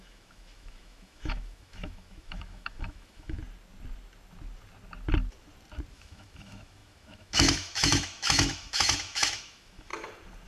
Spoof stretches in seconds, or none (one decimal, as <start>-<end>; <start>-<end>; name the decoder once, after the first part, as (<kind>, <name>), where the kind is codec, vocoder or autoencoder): 0.0-3.4 (autoencoder, DAC-VAE); 5.9-9.9